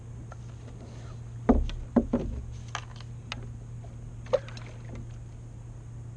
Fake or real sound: real